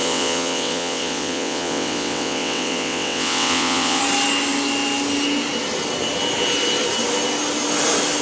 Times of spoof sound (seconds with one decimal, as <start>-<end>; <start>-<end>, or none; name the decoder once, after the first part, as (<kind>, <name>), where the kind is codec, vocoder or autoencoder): 0.0-4.0 (vocoder, WaveNeXt)

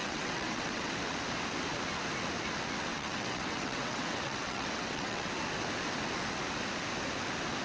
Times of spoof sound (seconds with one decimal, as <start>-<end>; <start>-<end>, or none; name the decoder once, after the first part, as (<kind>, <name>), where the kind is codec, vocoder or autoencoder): 0.0-0.9 (vocoder, WaveNeXt); 2.9-5.3

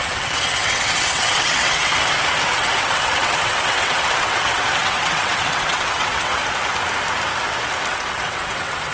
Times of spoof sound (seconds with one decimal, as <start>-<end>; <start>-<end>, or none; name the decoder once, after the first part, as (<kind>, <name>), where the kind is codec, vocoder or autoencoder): 0.0-1.9 (vocoder, WaveNeXt); 2.5-6.4; 7.9-8.9

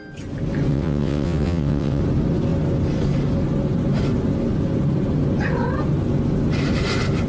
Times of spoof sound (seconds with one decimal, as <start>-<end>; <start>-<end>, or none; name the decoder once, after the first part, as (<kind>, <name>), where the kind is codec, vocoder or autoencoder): 0.7-2.0 (vocoder, WaveNeXt)

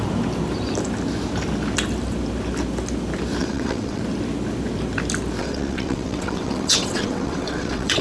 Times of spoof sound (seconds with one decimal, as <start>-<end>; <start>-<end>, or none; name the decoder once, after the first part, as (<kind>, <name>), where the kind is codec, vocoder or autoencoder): 3.4-4.0 (vocoder, WaveNeXt); 5.4-8.0

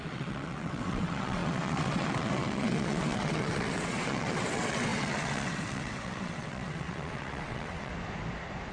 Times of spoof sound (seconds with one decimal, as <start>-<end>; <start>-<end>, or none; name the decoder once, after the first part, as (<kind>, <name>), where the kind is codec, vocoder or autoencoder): 0.0-7.9 (vocoder, WaveNeXt)